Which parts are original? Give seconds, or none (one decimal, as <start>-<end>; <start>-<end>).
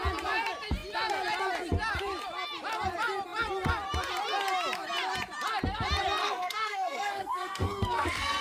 0.0-6.2